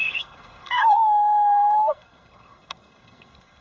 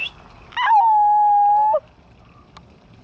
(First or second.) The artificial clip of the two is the first